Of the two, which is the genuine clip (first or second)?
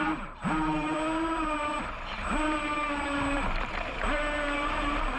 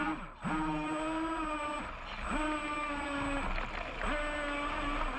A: second